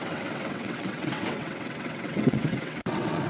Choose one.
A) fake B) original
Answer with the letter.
A